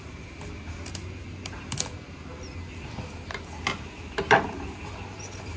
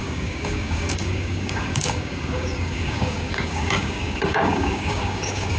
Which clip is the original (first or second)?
first